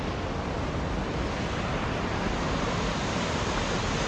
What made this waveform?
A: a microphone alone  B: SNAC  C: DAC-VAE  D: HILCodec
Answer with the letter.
A